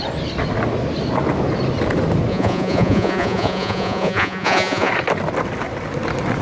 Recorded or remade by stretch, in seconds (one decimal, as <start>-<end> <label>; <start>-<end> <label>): 0.0-2.3 recorded; 2.3-4.9 remade; 4.9-6.4 recorded